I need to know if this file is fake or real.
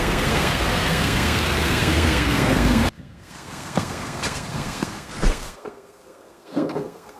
fake